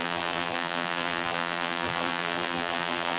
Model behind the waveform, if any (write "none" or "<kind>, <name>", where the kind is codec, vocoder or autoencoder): vocoder, BigVGAN v2